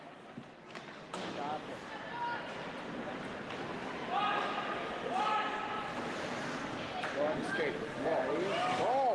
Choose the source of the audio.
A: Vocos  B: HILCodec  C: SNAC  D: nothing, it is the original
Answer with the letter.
D